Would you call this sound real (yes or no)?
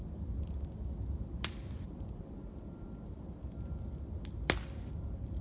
yes